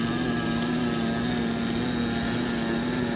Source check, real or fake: real